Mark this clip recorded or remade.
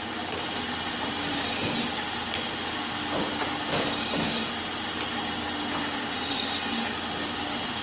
recorded